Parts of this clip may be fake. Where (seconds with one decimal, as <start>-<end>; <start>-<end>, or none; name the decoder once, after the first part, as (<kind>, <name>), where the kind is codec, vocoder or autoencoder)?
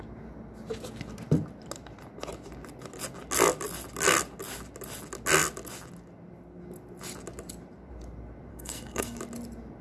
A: 8.5-9.2 (codec, SNAC)